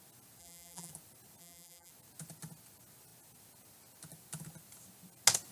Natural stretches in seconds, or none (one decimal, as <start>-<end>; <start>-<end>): 0.0-0.4; 0.9-1.4; 1.9-5.5